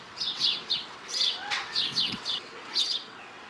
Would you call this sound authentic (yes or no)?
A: no